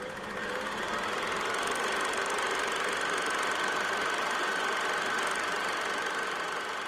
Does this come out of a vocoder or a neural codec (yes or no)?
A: no